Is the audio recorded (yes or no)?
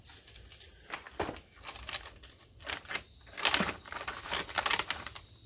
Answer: yes